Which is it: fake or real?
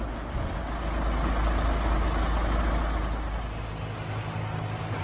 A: real